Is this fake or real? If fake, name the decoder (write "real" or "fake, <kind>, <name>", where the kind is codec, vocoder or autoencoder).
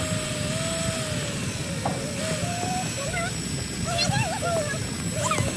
real